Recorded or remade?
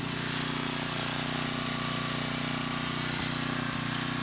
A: recorded